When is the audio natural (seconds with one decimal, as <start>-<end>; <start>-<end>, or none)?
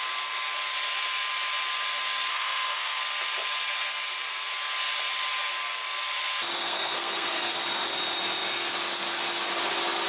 0.0-2.3; 3.0-6.6; 7.5-10.1